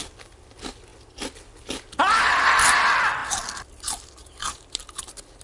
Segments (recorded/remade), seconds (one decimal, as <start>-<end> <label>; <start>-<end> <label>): 0.0-4.2 recorded; 4.2-4.8 remade; 4.8-5.4 recorded